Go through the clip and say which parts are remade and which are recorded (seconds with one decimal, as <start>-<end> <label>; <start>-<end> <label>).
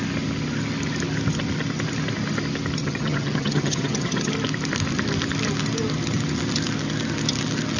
0.0-2.8 recorded; 2.8-4.3 remade; 4.3-7.8 recorded